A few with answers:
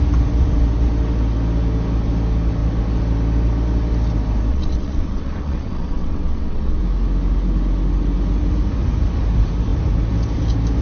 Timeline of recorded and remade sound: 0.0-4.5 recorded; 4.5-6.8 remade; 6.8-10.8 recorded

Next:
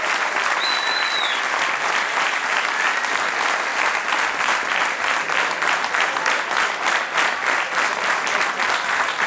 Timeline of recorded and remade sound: 0.0-9.3 recorded

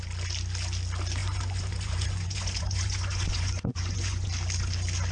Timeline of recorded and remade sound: 0.0-1.2 recorded; 1.2-4.3 remade; 4.3-5.1 recorded

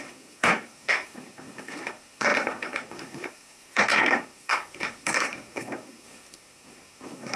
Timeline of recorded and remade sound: 0.0-7.4 remade

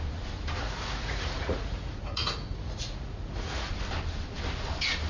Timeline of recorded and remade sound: 0.0-0.6 recorded; 0.6-3.7 remade; 3.7-5.1 recorded

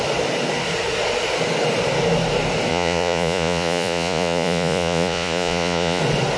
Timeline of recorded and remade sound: 0.0-2.7 recorded; 2.7-6.0 remade; 6.0-6.4 recorded